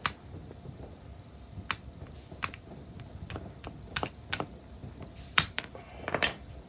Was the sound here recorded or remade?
remade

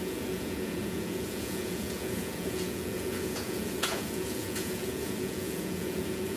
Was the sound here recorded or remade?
remade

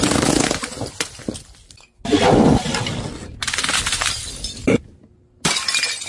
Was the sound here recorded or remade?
recorded